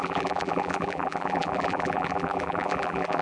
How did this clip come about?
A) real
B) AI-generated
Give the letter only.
B